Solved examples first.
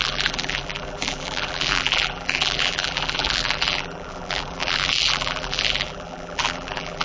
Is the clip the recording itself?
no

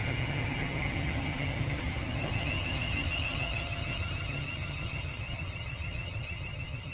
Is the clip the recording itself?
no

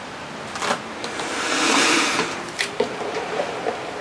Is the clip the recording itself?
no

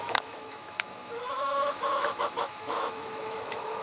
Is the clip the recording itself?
no